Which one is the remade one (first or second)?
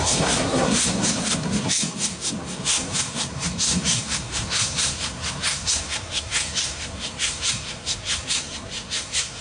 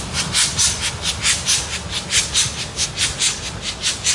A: first